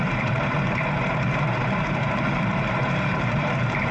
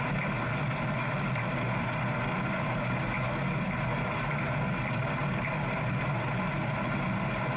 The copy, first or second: first